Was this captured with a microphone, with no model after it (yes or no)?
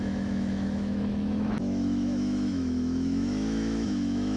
no